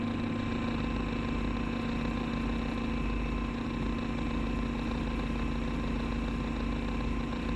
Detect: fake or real real